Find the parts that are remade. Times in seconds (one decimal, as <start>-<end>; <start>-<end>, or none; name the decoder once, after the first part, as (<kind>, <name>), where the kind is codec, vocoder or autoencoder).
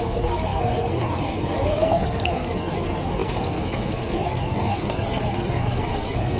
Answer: 0.0-6.4 (codec, SNAC)